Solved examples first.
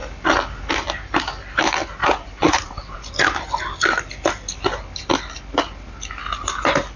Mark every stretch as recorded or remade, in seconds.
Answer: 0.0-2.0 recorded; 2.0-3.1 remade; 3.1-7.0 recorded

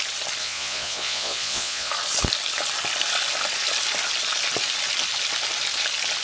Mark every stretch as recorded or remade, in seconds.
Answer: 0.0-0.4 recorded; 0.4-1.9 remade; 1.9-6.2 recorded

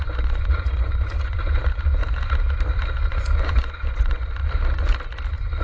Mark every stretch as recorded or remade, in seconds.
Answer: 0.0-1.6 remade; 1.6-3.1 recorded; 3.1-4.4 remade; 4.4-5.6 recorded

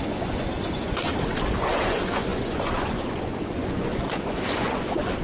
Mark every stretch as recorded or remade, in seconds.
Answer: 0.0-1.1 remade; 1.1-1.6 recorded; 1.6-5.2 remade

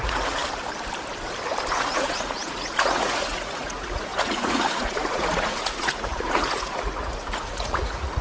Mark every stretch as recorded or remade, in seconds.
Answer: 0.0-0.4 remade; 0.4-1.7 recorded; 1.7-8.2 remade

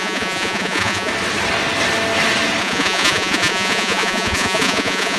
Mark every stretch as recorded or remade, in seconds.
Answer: 0.0-1.1 remade; 1.1-2.6 recorded; 2.6-5.2 remade